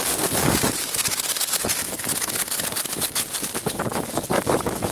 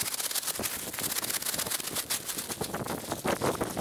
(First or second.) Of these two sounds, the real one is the second